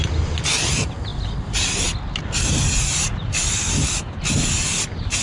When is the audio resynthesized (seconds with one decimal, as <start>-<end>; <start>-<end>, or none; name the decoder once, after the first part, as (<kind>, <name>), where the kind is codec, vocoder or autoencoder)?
none